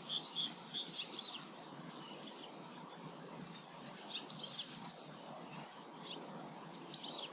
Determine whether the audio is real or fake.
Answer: fake